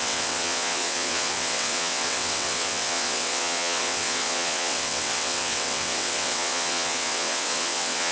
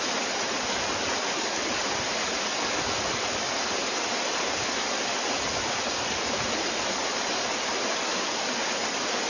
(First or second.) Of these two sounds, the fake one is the first